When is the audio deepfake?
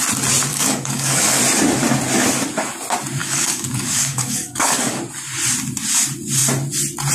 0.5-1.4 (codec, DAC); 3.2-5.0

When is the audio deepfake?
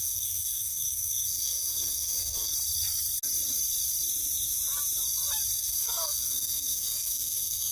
0.0-2.5 (codec, SNAC); 5.6-7.7